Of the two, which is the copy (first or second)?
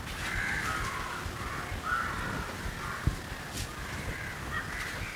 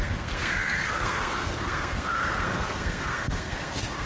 second